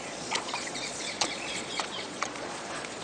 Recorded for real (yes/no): no